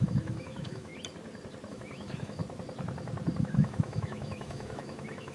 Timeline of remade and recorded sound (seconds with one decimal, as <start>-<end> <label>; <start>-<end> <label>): 0.0-0.9 remade; 0.9-1.7 recorded; 1.7-2.4 remade; 2.4-3.4 recorded; 3.4-5.3 remade